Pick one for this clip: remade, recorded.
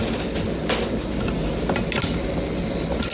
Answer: recorded